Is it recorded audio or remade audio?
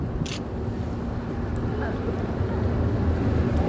recorded